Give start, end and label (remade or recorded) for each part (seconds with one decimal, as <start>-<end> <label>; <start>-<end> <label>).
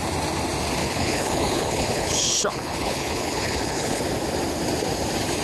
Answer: 0.0-0.8 recorded; 0.8-4.0 remade; 4.0-5.4 recorded